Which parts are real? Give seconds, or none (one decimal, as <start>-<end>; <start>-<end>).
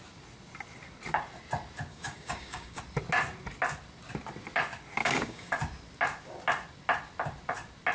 0.0-1.9; 2.8-5.0; 5.5-7.9